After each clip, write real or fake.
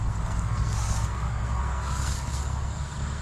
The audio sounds fake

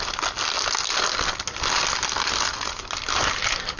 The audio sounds real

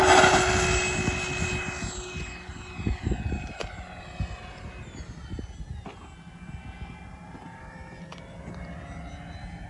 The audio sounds real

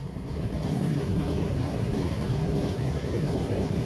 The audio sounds fake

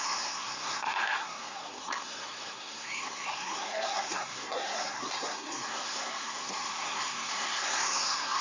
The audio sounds fake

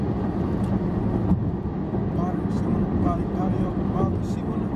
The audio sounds real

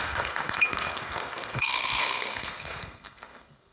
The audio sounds fake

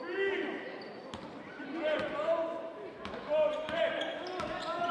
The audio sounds real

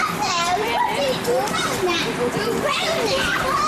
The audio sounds real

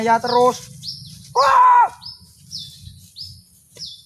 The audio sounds real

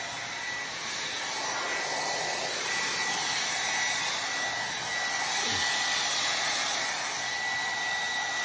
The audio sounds real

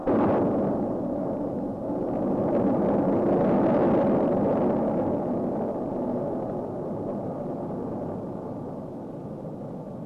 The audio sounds real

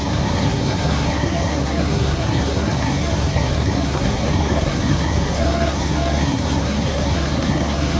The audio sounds fake